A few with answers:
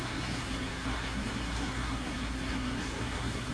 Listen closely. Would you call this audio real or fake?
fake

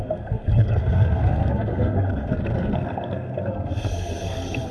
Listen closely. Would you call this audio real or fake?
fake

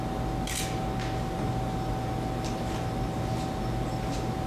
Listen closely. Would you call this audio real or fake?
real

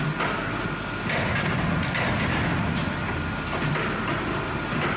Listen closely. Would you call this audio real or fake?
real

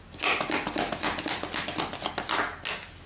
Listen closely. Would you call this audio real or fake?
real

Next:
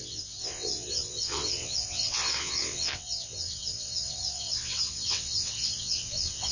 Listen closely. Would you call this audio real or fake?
fake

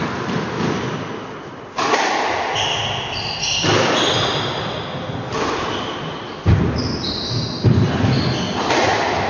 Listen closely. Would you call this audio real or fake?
real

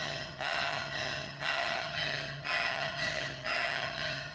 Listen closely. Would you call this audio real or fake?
fake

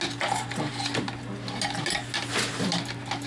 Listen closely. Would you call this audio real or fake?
real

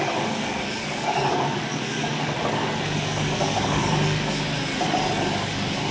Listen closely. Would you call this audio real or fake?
fake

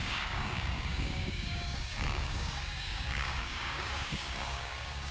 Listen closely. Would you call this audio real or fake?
fake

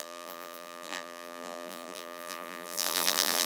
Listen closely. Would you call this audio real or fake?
fake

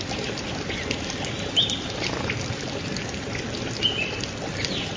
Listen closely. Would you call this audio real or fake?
real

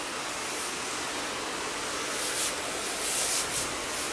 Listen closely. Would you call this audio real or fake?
real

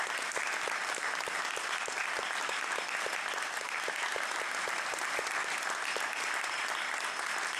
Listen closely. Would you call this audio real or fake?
fake